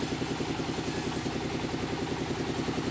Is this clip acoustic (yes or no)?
yes